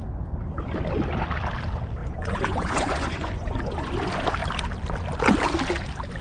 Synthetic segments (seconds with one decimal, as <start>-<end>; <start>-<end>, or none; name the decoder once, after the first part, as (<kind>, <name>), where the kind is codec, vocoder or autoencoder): 2.0-3.9 (vocoder, Vocos)